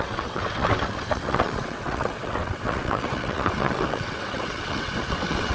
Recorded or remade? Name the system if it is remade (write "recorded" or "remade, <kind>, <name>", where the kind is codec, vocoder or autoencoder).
remade, vocoder, WaveNeXt